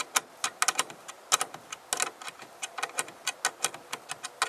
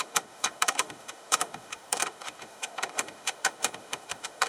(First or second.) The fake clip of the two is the second